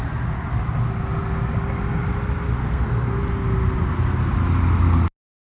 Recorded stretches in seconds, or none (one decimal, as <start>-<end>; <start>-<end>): 0.0-2.6; 3.2-5.5